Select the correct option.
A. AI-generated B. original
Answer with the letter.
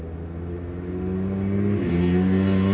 B